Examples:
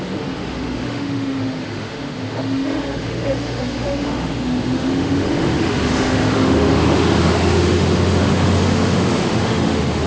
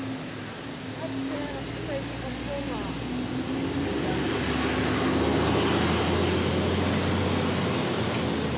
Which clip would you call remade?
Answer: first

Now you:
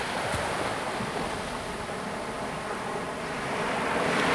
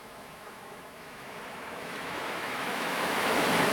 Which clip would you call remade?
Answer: second